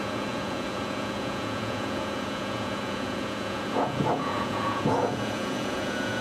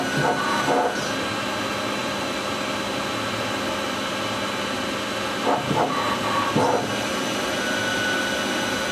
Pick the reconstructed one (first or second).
first